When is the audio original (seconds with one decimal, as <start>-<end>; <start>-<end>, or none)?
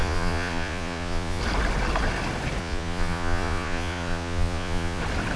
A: 1.4-2.6; 5.0-5.4